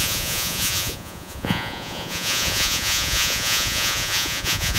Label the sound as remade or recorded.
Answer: remade